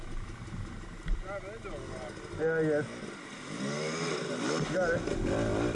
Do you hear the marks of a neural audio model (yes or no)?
no